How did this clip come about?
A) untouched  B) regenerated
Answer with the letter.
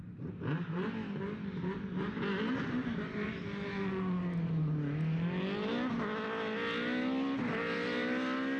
A